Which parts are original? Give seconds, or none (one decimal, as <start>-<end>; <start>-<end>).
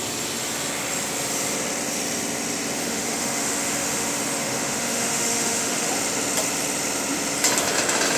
0.0-2.8; 5.9-8.2